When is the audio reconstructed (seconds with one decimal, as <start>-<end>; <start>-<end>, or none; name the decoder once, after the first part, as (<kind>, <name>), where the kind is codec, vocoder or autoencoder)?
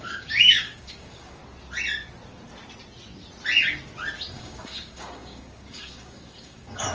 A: 0.0-1.4 (codec, DAC); 4.3-6.9